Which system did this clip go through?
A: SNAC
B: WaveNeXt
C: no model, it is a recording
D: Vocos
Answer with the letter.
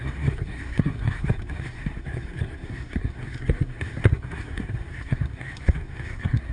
A